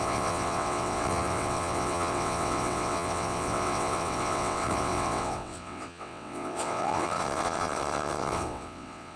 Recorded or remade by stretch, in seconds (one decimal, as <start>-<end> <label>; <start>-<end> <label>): 0.0-9.2 remade